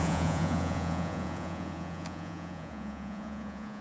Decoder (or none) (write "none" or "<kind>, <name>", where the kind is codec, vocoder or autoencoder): vocoder, Vocos